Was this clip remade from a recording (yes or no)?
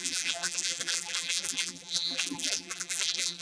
yes